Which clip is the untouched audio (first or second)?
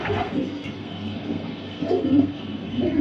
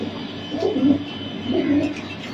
second